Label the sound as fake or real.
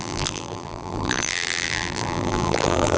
fake